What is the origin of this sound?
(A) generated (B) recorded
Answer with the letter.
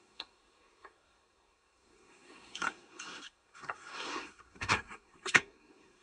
A